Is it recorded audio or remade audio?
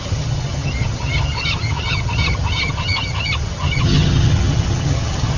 remade